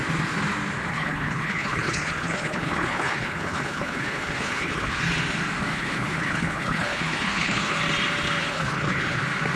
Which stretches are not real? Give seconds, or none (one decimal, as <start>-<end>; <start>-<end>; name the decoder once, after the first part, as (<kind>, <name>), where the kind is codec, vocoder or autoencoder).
0.9-5.0 (codec, HILCodec); 5.7-7.8; 8.4-9.2